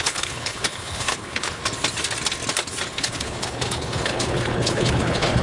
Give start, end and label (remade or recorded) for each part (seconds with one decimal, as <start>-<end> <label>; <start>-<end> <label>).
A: 0.0-1.6 remade; 1.6-3.0 recorded; 3.0-5.4 remade